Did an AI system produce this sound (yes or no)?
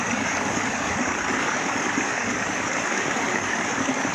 yes